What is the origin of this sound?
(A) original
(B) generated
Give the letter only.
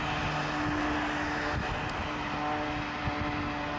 A